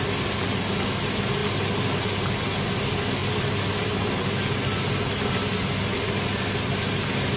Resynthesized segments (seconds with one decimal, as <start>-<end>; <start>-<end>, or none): none